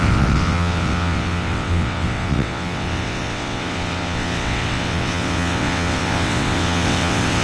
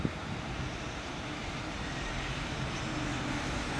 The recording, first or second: second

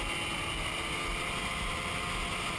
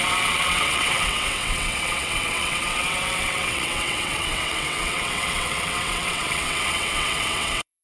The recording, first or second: first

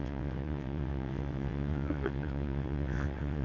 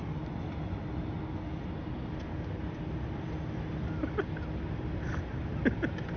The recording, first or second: second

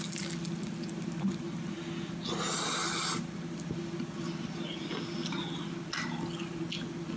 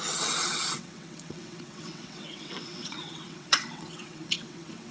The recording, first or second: first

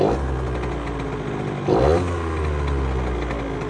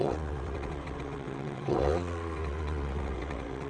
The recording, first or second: first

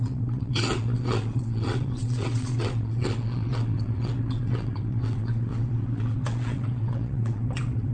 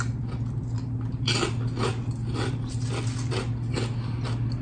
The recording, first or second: second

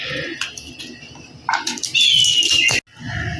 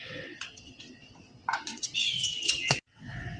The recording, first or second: first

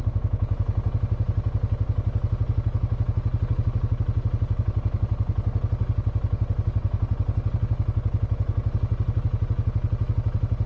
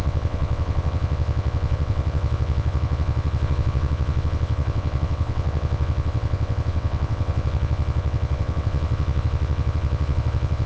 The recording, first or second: first